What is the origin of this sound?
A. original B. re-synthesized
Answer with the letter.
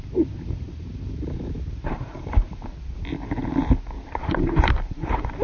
B